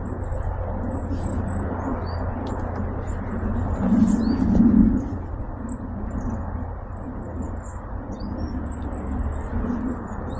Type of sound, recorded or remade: recorded